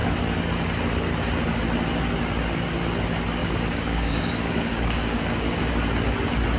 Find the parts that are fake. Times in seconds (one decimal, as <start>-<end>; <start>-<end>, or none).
3.4-5.7